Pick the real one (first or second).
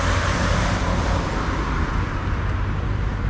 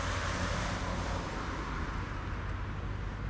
second